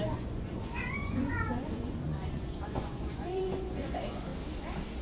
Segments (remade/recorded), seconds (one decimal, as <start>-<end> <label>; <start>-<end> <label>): 0.0-4.3 remade; 4.3-5.0 recorded